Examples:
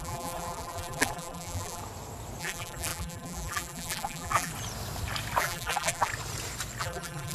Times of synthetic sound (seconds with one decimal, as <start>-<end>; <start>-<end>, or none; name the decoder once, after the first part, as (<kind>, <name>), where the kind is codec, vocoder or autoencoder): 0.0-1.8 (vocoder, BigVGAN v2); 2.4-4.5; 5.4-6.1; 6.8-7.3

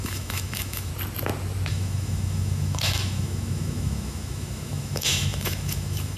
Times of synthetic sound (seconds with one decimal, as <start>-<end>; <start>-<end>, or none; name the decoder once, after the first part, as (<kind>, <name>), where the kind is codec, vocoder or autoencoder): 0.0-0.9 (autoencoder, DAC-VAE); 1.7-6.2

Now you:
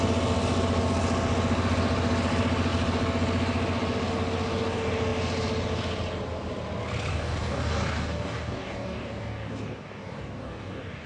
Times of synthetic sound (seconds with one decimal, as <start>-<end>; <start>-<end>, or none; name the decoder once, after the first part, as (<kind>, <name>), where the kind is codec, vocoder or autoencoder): 7.1-11.1 (codec, DAC)

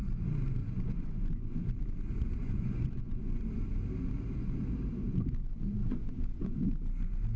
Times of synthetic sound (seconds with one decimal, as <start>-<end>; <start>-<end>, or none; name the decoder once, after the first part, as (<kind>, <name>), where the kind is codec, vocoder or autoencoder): 0.6-1.6 (vocoder, Vocos); 2.1-3.4; 5.8-6.6

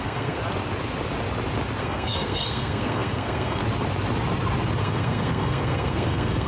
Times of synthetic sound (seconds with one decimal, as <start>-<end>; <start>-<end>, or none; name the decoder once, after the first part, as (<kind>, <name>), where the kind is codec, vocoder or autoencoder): 0.0-0.4 (codec, SNAC); 1.8-3.6; 4.8-6.5

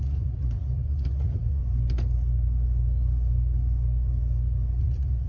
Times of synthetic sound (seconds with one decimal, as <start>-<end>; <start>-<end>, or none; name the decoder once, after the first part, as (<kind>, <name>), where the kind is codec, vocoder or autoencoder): 0.0-1.6 (vocoder, Vocos); 4.8-5.3

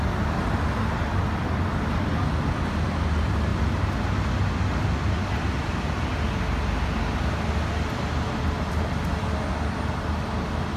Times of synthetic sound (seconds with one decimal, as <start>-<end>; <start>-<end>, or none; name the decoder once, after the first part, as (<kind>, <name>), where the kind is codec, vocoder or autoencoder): none

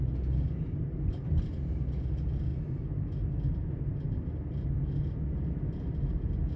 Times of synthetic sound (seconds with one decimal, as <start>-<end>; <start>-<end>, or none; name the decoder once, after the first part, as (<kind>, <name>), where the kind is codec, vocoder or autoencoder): 2.5-3.7 (vocoder, BigVGAN v2)